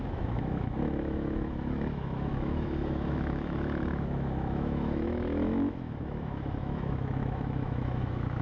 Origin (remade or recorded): remade